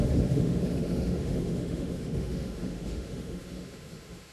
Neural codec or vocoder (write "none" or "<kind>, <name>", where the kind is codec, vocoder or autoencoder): autoencoder, DAC-VAE